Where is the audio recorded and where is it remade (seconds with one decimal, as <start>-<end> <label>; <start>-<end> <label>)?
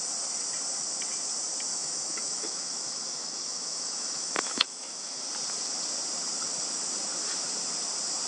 0.0-1.7 recorded; 1.7-5.2 remade; 5.2-8.3 recorded